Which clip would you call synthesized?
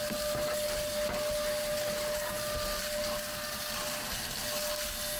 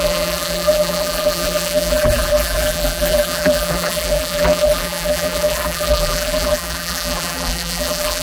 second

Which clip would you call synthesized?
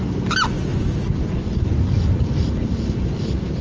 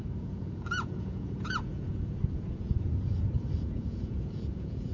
second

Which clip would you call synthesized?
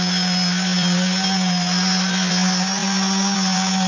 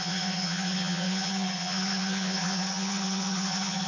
second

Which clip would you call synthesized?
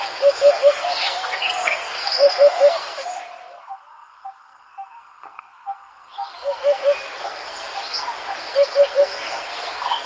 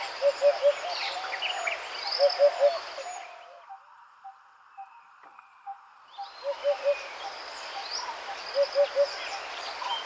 first